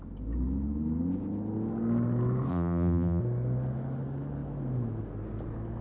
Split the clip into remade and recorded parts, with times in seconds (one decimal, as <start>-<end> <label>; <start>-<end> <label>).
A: 0.0-2.5 recorded; 2.5-3.2 remade; 3.2-5.8 recorded